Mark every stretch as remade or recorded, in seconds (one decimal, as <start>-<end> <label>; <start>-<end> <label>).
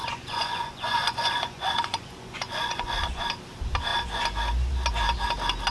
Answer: 0.0-3.2 remade; 3.2-5.7 recorded